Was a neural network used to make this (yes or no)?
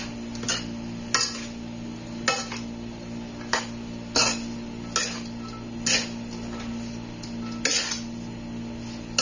no